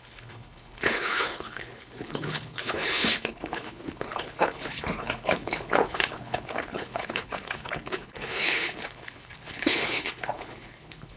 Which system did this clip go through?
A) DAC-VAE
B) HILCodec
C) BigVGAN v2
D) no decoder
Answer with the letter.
B